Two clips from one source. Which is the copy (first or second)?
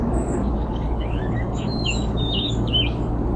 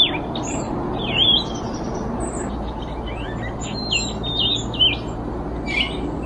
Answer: first